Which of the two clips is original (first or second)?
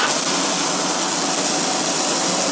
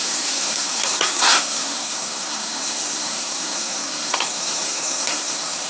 first